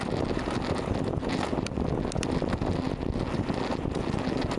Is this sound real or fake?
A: real